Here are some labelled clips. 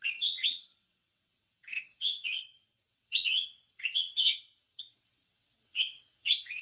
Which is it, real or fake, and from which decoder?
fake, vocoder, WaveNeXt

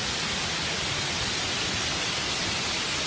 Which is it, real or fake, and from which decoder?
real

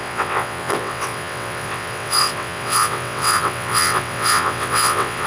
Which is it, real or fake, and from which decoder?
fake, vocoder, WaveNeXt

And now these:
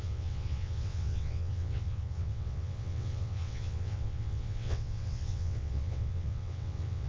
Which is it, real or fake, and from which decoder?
fake, vocoder, WaveNeXt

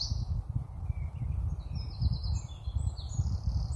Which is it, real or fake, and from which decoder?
real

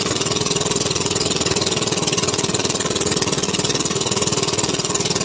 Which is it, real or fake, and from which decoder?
fake, vocoder, WaveNeXt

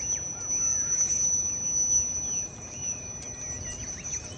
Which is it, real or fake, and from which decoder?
real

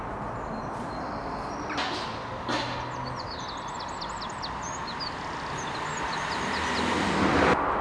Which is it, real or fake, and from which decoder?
real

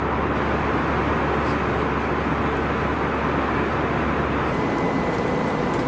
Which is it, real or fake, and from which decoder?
real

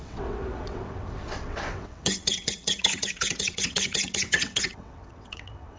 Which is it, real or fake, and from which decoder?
fake, vocoder, WaveNeXt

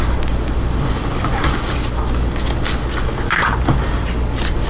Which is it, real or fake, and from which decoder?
real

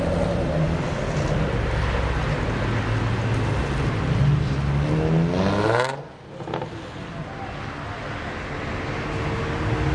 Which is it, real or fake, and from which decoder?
real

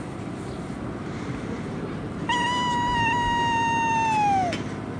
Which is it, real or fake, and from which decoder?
real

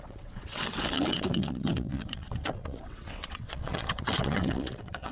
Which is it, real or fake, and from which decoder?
fake, vocoder, WaveNeXt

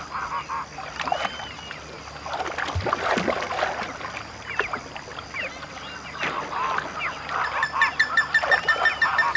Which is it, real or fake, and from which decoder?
real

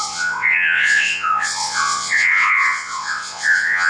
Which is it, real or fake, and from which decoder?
fake, vocoder, WaveNeXt